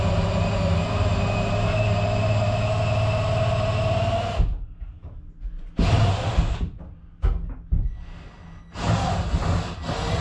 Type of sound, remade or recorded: recorded